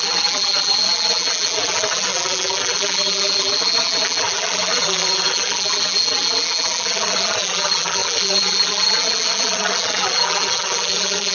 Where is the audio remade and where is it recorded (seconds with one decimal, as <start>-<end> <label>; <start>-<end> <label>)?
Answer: 0.0-11.3 remade